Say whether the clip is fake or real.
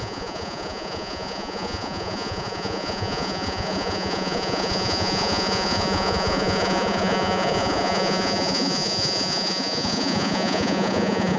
fake